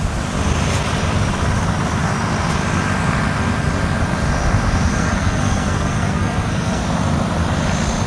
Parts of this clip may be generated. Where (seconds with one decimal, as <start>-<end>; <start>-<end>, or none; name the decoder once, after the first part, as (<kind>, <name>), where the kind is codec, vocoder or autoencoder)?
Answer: 4.9-6.8 (codec, SNAC)